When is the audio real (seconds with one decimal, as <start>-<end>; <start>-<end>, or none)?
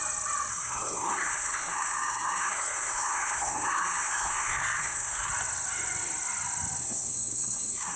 0.0-0.5; 5.3-6.8